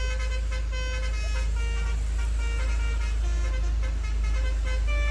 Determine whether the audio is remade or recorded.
recorded